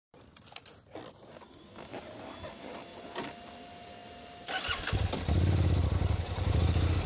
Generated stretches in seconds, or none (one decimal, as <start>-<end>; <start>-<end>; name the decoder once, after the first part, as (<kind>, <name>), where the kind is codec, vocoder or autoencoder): none

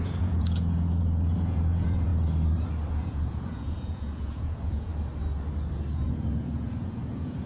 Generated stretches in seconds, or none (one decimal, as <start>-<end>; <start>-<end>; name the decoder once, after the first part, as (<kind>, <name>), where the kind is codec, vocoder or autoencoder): 0.0-2.1 (vocoder, Vocos); 2.9-4.9; 5.9-7.5

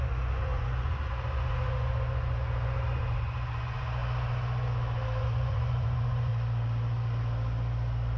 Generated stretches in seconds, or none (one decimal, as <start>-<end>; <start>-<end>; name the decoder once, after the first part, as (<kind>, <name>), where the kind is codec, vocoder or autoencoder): 0.0-4.0 (vocoder, Vocos); 5.2-6.3